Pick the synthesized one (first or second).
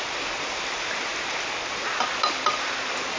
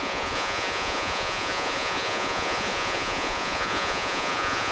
second